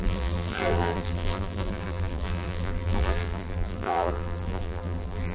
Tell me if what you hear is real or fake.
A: fake